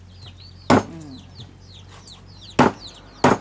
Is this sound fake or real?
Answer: real